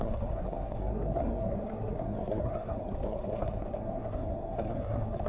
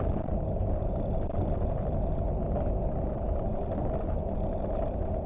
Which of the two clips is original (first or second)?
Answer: second